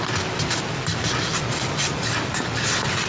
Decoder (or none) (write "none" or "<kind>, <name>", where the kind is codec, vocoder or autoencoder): none